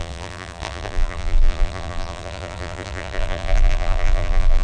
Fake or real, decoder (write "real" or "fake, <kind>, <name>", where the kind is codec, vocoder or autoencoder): fake, vocoder, BigVGAN v2